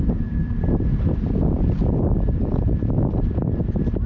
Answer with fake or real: fake